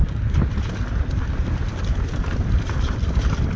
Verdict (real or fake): real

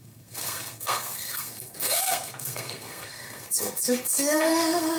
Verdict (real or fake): fake